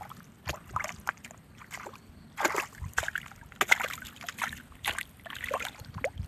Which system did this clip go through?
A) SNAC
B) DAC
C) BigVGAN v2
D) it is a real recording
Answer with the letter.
D